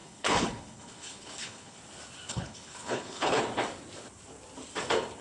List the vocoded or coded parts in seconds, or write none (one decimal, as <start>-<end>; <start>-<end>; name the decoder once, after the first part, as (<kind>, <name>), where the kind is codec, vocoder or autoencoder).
0.0-1.8 (codec, HILCodec); 2.3-3.4